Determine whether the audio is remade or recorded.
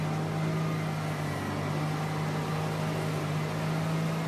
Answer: recorded